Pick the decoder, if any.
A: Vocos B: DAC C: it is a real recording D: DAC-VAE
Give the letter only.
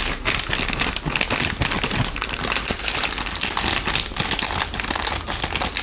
C